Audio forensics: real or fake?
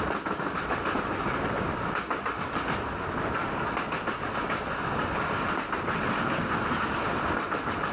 real